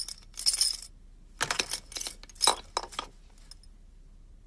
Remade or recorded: recorded